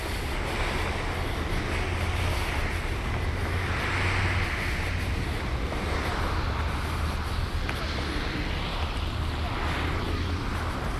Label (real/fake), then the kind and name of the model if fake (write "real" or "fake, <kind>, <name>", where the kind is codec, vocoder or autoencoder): real